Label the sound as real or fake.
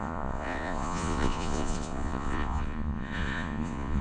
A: fake